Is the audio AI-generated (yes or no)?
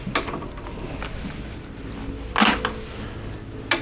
no